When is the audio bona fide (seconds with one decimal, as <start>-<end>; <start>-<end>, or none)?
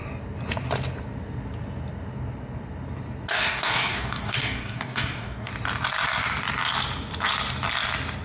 0.0-3.3; 5.5-8.2